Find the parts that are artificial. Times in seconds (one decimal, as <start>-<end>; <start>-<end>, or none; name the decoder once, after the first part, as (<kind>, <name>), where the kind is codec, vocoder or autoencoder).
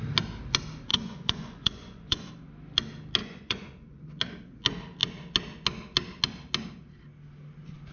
0.9-2.3 (vocoder, Vocos); 3.2-4.0